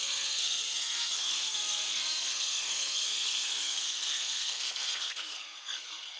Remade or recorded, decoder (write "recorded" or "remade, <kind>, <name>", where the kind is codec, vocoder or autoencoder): remade, codec, SNAC